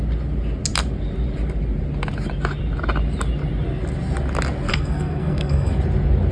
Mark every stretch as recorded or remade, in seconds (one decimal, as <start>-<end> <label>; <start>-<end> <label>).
0.0-4.7 recorded; 4.7-5.7 remade; 5.7-6.3 recorded